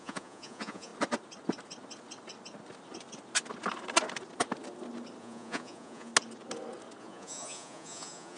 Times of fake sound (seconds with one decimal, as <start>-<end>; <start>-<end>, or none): 0.0-0.9; 5.2-6.1; 7.0-8.4